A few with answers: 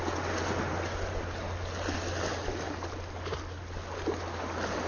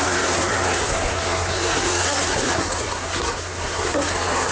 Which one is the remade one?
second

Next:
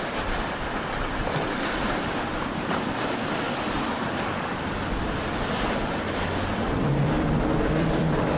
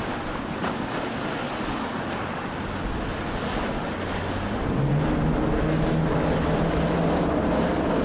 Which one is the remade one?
first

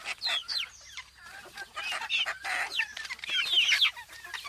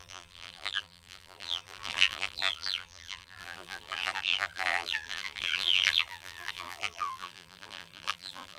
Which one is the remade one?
second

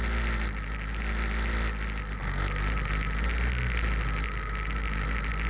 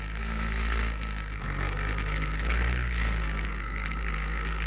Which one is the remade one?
second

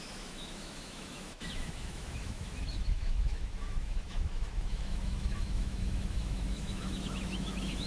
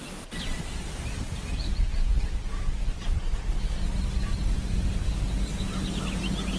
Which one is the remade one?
first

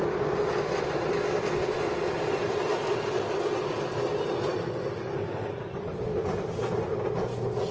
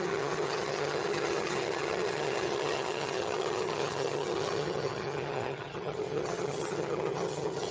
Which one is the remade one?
second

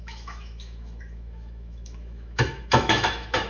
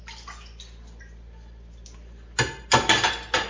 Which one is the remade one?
first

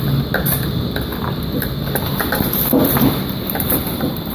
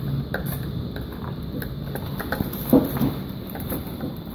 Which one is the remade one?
second